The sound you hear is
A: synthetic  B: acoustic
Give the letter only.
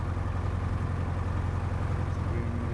B